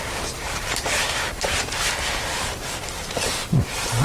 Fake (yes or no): yes